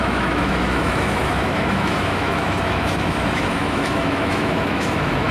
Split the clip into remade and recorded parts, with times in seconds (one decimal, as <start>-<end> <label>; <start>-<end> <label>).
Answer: 0.0-5.3 remade